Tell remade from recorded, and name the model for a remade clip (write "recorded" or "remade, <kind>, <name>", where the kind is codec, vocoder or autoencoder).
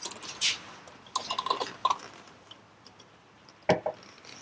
recorded